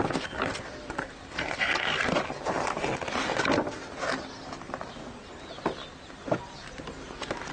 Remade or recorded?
recorded